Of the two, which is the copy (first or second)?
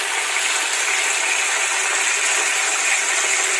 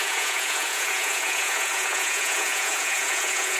second